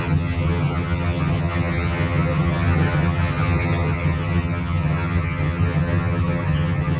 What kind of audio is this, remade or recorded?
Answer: remade